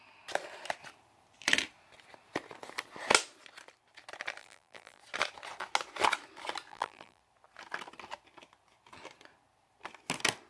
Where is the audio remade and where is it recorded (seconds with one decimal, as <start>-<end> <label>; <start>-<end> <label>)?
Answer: 0.0-4.4 recorded; 4.4-5.0 remade; 5.0-6.7 recorded; 6.7-7.2 remade; 7.2-10.5 recorded